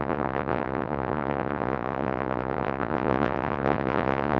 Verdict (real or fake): fake